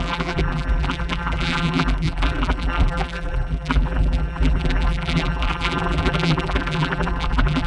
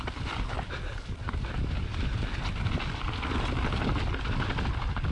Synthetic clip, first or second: first